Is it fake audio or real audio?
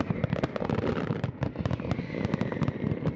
real